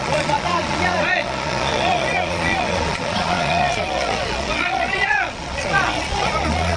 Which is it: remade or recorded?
remade